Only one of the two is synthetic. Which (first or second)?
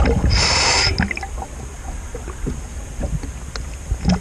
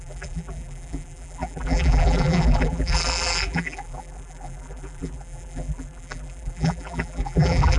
second